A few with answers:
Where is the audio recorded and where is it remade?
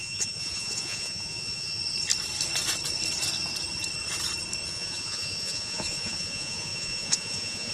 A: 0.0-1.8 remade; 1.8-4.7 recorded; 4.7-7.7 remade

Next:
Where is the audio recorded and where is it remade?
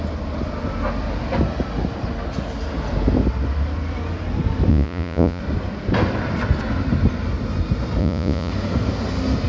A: 0.0-4.7 recorded; 4.7-5.4 remade; 5.4-8.0 recorded; 8.0-8.5 remade; 8.5-9.5 recorded